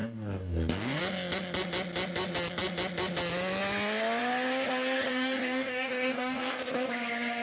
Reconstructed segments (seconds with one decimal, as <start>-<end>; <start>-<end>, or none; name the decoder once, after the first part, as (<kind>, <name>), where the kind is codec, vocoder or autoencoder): 0.0-1.0 (codec, DAC); 5.1-6.6